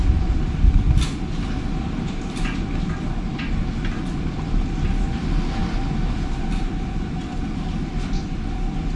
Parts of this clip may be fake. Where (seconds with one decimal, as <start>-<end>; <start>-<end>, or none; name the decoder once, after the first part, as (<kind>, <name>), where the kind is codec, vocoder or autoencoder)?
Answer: none

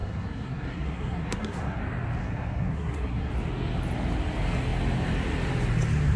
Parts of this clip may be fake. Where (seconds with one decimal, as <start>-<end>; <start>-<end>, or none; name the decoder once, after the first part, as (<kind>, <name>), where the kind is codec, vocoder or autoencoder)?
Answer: 0.0-1.8 (codec, SNAC); 2.2-3.3